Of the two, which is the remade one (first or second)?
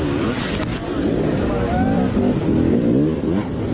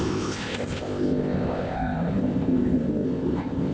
second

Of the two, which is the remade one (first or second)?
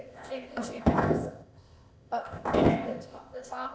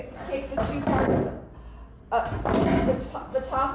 first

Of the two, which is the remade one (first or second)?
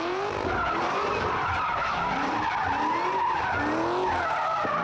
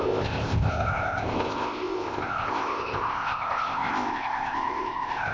second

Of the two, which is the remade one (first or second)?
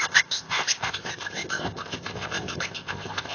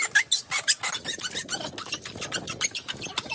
first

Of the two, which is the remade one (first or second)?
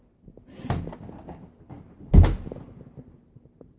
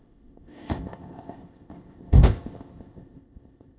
second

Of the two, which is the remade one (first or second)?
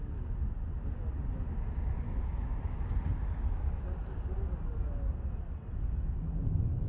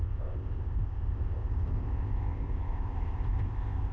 second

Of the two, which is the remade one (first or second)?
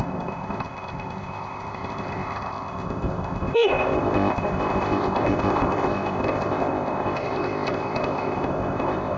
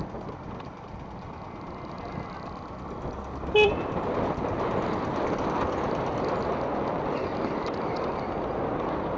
first